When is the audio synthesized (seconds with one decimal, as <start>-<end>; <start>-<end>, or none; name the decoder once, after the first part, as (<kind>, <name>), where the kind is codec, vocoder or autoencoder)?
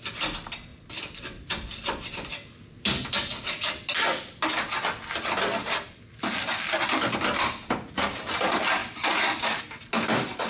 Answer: 0.7-2.3 (vocoder, BigVGAN v2); 8.8-9.6